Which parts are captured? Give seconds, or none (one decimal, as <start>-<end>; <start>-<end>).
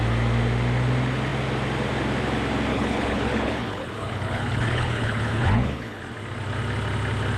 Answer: 0.0-2.7; 6.0-7.4